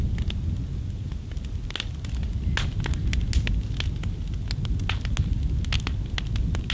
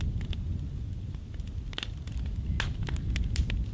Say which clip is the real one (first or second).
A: first